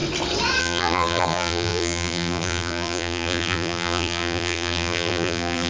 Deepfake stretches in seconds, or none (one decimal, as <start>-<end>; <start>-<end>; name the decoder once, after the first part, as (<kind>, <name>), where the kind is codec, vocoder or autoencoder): 0.6-5.7 (vocoder, BigVGAN v2)

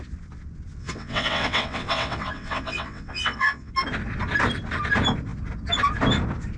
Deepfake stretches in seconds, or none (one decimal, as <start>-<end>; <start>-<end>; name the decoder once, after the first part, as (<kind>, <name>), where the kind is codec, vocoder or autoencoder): 0.8-3.7 (vocoder, WaveNeXt)